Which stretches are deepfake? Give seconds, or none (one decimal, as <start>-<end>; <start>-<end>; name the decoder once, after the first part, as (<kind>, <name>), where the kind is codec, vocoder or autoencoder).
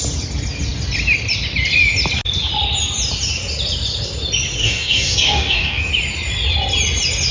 4.6-5.9 (codec, DAC)